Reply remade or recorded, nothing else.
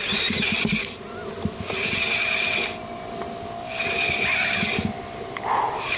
recorded